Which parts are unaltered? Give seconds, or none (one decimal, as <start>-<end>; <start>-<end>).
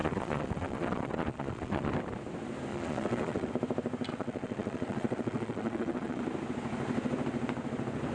1.9-2.7; 3.5-4.1; 6.2-8.1